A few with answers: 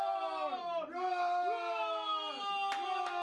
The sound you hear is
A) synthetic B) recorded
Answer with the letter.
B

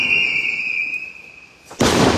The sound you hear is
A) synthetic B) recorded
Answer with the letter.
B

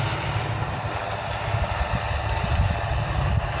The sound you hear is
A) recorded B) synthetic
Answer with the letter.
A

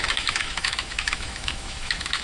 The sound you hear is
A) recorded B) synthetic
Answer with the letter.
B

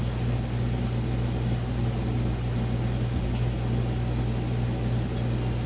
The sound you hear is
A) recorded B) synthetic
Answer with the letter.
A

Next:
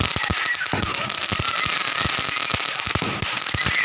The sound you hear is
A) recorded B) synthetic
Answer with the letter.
A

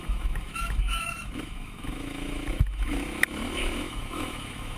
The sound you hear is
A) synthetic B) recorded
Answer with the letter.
A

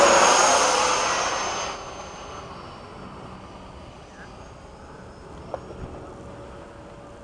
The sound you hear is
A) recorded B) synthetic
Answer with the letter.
A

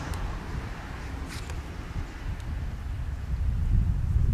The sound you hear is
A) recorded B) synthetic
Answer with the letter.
A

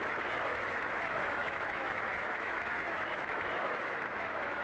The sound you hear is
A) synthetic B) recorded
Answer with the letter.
A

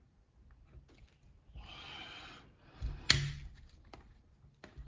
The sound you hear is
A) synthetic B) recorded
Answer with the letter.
B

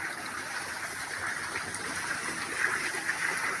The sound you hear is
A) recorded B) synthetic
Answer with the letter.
A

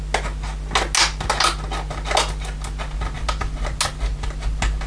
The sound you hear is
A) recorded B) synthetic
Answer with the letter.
A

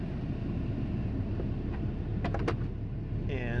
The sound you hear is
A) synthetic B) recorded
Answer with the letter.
B